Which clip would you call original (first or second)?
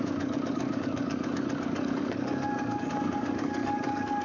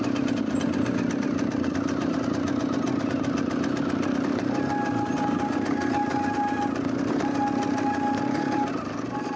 second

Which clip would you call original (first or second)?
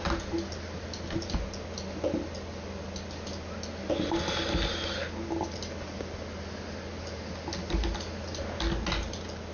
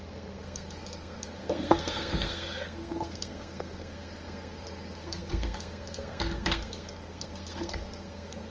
first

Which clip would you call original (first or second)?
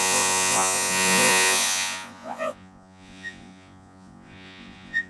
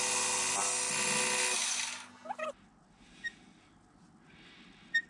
second